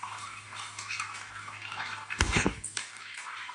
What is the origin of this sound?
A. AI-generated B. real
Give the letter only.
A